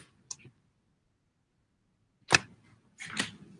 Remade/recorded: recorded